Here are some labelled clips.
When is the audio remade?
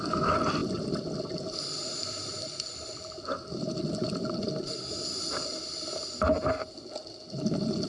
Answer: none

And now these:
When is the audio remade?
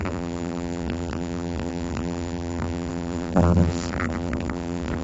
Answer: 0.0-5.0 (vocoder, BigVGAN v2)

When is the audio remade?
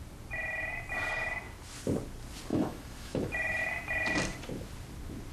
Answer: 2.5-3.6 (autoencoder, DAC-VAE)